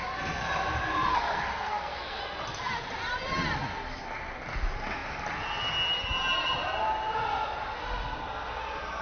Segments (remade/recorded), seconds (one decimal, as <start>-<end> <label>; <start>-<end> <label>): 0.0-1.1 recorded; 1.1-2.2 remade; 2.2-9.0 recorded